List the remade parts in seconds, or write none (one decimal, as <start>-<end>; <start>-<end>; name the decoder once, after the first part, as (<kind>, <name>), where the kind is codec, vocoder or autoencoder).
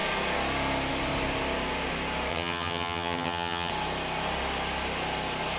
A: 2.3-3.7 (vocoder, HiFi-GAN)